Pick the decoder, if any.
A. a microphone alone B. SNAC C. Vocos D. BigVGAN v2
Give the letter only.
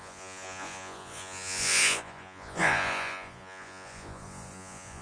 C